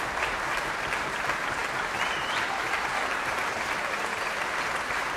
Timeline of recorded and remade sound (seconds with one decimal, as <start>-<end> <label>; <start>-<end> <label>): 0.0-5.2 recorded